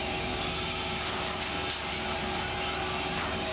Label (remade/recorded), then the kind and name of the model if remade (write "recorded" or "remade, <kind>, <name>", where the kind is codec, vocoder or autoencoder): recorded